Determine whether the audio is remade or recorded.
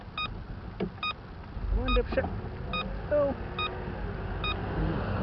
recorded